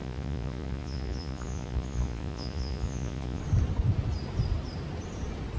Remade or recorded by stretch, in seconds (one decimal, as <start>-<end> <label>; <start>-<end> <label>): 0.0-3.4 remade; 3.4-5.6 recorded